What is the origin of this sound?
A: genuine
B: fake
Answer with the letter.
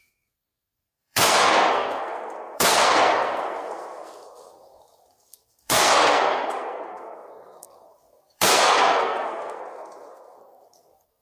B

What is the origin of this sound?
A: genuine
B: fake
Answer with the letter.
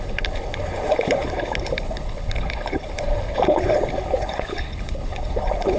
B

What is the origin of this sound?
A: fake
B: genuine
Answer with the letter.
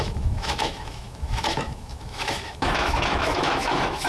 A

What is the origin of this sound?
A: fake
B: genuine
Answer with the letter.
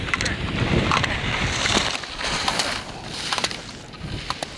A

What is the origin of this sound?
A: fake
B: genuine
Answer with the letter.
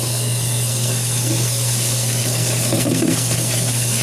A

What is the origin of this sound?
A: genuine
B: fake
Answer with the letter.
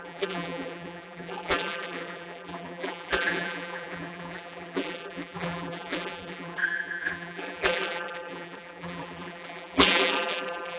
B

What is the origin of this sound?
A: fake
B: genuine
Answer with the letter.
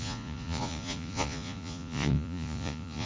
A